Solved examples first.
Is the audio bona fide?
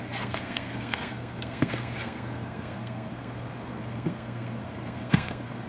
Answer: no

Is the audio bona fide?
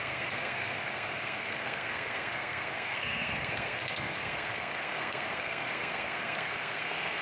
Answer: no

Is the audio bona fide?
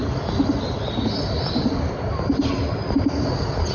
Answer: yes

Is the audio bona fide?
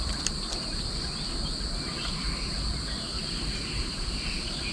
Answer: yes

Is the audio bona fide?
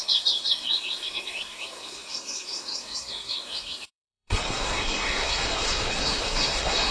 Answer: no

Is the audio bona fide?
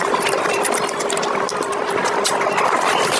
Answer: yes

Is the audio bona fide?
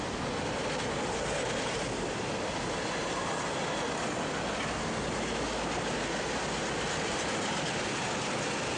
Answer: yes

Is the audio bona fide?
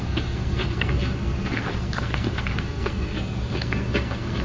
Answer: no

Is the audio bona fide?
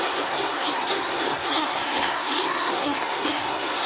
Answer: no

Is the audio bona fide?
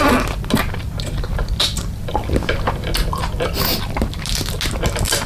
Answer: yes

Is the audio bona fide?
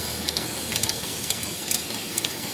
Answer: no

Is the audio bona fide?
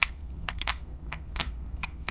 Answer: no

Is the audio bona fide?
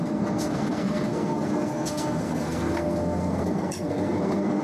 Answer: no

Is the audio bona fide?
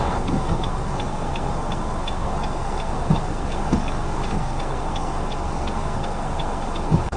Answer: no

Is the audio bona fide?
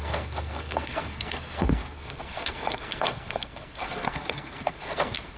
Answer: no